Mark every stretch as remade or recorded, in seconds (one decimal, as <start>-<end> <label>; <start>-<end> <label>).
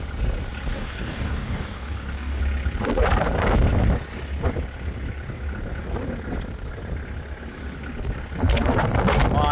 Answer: 0.0-0.7 recorded; 0.7-2.4 remade; 2.4-9.5 recorded